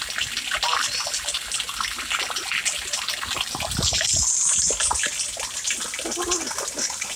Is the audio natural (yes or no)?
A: yes